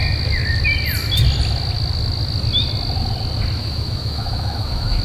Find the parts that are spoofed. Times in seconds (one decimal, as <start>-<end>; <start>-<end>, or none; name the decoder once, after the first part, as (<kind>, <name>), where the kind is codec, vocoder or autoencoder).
3.6-5.0 (autoencoder, DAC-VAE)